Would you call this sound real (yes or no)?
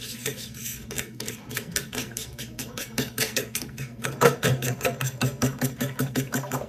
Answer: no